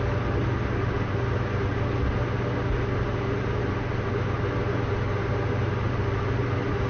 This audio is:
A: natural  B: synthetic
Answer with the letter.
A